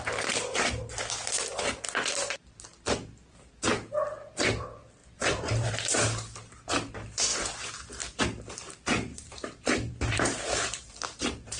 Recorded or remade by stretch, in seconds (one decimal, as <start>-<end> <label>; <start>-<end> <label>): 0.0-5.0 recorded; 5.0-5.7 remade; 5.7-9.1 recorded; 9.1-11.6 remade